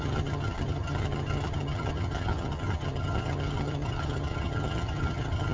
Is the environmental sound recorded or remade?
remade